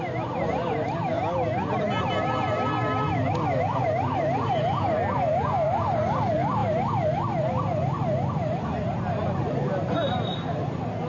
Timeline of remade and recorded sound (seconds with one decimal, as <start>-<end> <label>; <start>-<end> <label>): 0.0-11.1 recorded